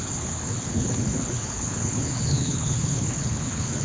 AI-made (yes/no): yes